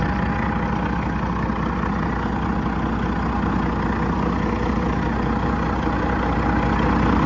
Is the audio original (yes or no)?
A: yes